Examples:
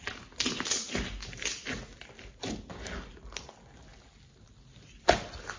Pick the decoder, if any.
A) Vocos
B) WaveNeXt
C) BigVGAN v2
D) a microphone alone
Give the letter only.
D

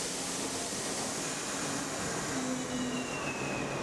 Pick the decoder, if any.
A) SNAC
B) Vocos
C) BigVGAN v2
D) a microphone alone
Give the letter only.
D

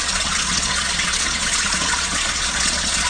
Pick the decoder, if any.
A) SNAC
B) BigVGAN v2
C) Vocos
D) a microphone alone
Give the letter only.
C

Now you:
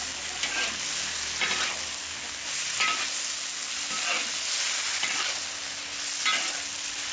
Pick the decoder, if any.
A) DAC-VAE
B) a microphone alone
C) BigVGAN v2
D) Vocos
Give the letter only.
B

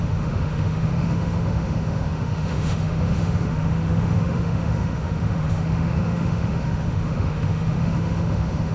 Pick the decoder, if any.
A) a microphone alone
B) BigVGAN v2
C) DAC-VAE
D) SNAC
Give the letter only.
C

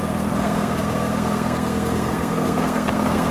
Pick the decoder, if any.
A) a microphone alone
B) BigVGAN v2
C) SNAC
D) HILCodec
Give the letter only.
C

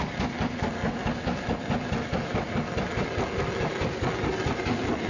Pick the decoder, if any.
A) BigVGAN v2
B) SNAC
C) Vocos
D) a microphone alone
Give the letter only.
D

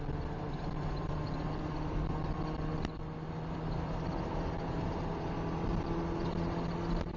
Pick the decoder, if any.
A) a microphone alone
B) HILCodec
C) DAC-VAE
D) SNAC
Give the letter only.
A